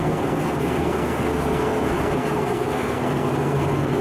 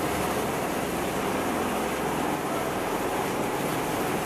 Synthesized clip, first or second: first